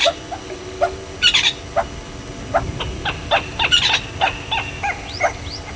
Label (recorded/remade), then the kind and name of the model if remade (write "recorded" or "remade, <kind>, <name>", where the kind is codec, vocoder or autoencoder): recorded